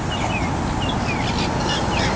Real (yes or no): yes